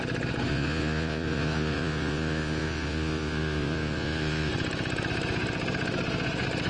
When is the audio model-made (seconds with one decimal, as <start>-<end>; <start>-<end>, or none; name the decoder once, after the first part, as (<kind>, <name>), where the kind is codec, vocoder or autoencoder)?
0.5-4.5 (vocoder, Vocos)